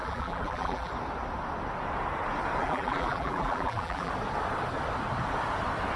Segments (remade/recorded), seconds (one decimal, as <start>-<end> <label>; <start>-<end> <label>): 0.0-0.9 remade; 0.9-2.6 recorded; 2.6-4.1 remade; 4.1-6.0 recorded